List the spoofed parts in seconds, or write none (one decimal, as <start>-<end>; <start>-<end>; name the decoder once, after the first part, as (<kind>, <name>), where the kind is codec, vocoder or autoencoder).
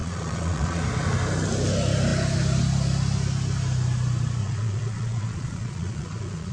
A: 0.0-0.8 (vocoder, Vocos); 4.4-6.5